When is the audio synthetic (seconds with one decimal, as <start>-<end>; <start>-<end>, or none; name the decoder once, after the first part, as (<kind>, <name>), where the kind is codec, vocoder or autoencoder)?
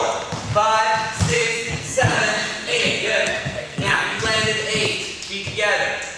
1.3-2.2 (codec, SNAC); 2.7-4.2